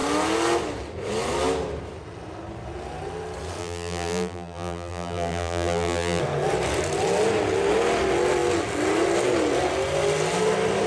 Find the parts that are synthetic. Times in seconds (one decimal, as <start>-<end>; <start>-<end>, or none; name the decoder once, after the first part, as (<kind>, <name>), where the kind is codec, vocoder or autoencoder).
3.6-6.2 (vocoder, BigVGAN v2)